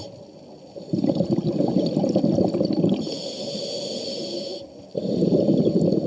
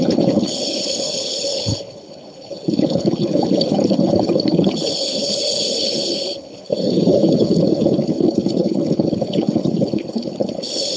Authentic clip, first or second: first